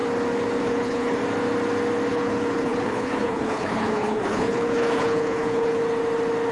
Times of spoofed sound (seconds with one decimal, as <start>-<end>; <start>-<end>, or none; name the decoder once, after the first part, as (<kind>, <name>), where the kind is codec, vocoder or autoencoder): 0.6-1.2 (codec, HILCodec); 2.1-5.8